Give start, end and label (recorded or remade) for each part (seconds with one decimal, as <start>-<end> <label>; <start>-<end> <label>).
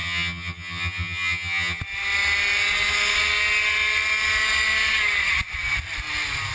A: 0.0-1.8 remade; 1.8-6.5 recorded